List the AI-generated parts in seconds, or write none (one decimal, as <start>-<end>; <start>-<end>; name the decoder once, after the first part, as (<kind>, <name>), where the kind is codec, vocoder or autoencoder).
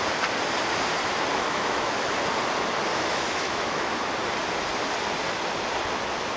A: 1.3-2.1 (autoencoder, DAC-VAE); 2.9-3.8